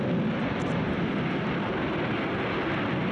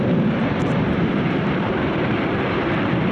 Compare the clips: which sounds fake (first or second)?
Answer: second